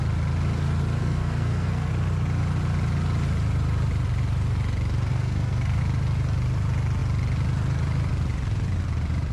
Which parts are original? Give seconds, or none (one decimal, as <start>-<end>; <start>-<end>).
0.0-1.0; 1.9-5.1; 5.8-9.3